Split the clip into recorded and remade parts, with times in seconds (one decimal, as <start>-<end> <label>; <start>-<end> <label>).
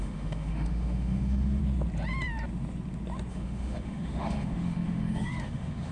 0.0-1.6 remade; 1.6-3.3 recorded; 3.3-5.9 remade